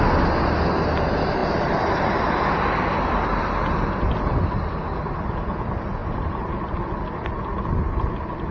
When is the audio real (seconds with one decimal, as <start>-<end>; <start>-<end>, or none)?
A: 0.0-6.0; 6.5-8.5